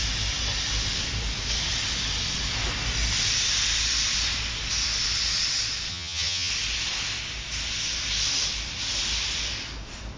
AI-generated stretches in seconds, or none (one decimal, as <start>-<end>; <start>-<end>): 5.9-6.5